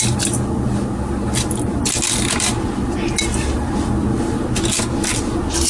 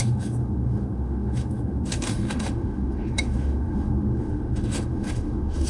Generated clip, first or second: second